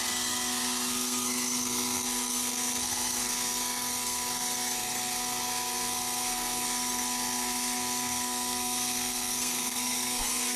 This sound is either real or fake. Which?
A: fake